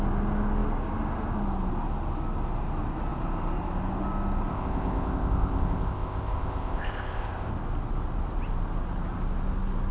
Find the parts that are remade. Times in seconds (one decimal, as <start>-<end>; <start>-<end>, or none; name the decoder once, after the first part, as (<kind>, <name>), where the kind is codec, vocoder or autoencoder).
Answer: 4.5-7.5 (codec, ZipCodec)